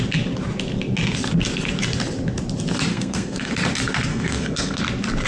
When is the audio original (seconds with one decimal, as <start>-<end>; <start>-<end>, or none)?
0.0-2.9; 3.5-4.1; 4.8-5.3

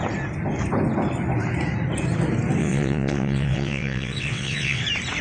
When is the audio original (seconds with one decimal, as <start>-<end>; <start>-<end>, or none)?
0.0-2.6; 4.8-5.2